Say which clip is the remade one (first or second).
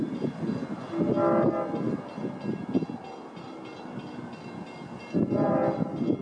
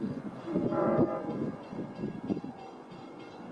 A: second